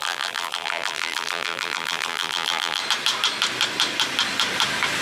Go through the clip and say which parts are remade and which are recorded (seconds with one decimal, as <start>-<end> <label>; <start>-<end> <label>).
0.0-2.8 remade; 2.8-5.0 recorded